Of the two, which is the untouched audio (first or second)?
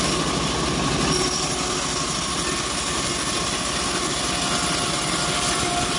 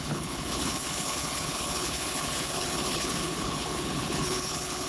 first